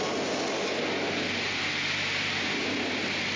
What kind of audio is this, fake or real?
real